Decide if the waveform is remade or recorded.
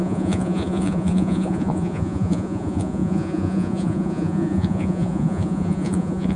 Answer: remade